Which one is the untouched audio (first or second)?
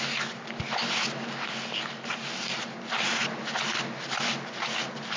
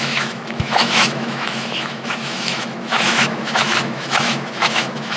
first